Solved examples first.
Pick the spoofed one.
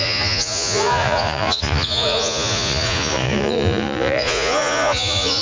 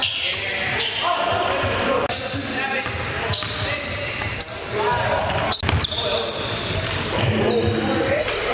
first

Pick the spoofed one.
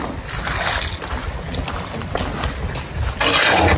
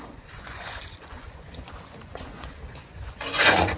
second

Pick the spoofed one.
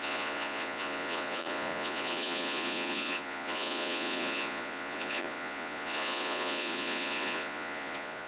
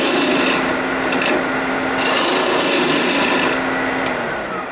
first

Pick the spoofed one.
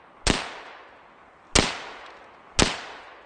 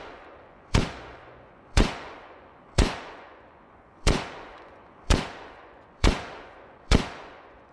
second